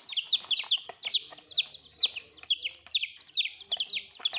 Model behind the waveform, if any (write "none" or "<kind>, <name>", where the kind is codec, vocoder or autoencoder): none